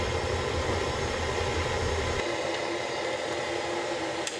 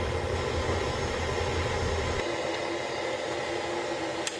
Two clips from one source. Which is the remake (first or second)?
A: first